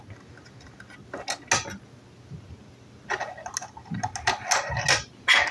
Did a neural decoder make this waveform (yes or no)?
no